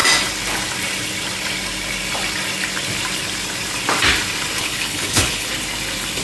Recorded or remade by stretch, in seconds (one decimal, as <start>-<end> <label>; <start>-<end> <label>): 0.0-4.6 recorded; 4.6-5.5 remade; 5.5-6.2 recorded